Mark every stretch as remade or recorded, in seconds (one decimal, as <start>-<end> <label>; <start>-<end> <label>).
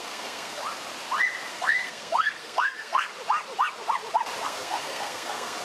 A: 0.0-0.6 remade; 0.6-1.5 recorded; 1.5-3.1 remade; 3.1-4.4 recorded; 4.4-5.6 remade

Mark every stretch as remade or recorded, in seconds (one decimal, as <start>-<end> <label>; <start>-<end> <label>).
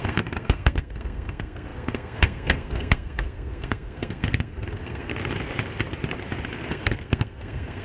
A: 0.0-5.2 remade; 5.2-6.7 recorded; 6.7-7.8 remade